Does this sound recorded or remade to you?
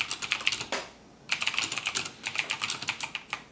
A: recorded